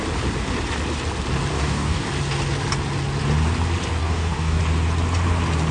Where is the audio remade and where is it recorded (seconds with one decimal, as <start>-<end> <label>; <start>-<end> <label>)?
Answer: 0.0-1.5 recorded; 1.5-2.1 remade; 2.1-4.0 recorded; 4.0-4.6 remade; 4.6-5.7 recorded